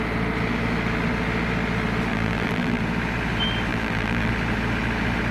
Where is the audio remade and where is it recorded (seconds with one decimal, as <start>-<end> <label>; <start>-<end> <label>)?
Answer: 0.0-2.1 recorded; 2.1-2.8 remade; 2.8-3.7 recorded; 3.7-4.3 remade; 4.3-5.3 recorded